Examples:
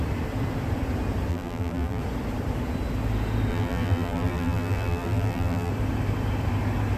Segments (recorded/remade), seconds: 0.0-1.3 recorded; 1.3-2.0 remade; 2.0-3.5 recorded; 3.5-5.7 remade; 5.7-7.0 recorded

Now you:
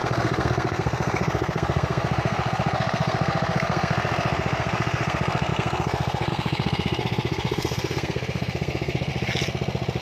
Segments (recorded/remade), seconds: 0.0-9.1 remade; 9.1-10.0 recorded